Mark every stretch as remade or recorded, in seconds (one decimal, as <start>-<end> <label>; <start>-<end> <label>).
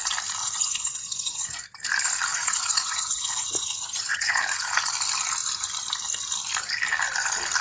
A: 0.0-0.4 recorded; 0.4-1.6 remade; 1.6-2.3 recorded; 2.3-4.4 remade; 4.4-7.6 recorded